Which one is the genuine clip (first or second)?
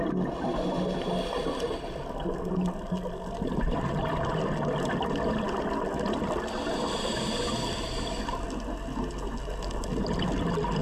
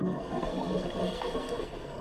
first